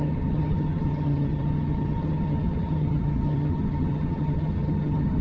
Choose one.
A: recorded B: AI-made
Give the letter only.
B